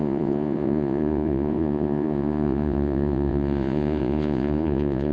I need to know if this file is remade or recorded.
remade